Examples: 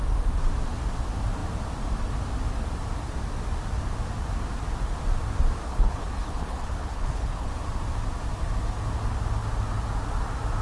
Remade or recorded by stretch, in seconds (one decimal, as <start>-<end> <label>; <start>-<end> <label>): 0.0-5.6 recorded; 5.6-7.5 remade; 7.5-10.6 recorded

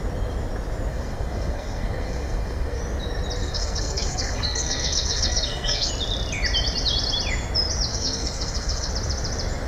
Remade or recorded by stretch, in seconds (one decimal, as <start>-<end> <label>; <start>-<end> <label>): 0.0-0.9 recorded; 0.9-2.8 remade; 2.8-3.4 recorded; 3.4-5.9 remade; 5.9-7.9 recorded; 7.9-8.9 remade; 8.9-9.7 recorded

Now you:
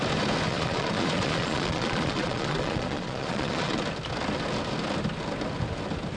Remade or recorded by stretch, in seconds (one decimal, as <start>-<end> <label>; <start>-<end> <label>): 0.0-0.5 recorded; 0.5-3.8 remade; 3.8-6.2 recorded